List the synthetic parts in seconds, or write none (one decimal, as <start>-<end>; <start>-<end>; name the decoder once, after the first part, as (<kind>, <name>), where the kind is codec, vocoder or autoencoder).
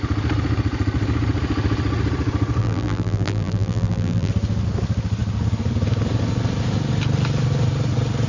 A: 2.6-4.3 (vocoder, BigVGAN v2)